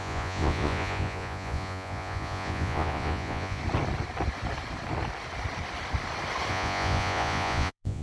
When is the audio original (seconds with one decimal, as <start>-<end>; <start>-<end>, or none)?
3.6-6.5